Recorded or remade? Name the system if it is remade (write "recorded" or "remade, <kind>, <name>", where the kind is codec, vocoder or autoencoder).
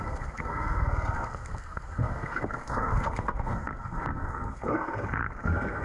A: remade, codec, SNAC